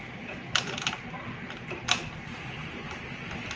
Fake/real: real